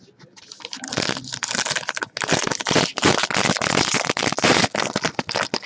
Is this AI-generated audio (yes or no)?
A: no